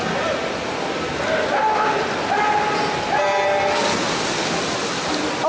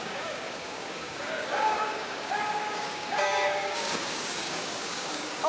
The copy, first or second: second